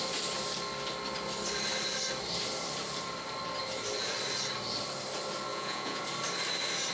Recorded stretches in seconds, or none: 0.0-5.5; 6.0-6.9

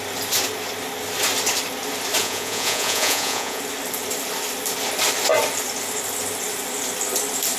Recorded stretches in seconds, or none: 0.0-2.2; 3.6-7.6

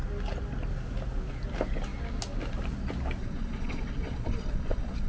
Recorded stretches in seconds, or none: 0.0-3.2

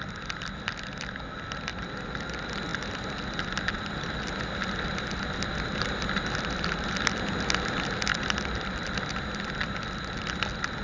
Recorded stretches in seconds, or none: 0.0-10.8